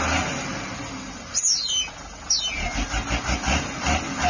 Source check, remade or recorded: recorded